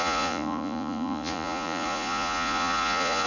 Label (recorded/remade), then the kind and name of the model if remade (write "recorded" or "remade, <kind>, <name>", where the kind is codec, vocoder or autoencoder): remade, vocoder, Vocos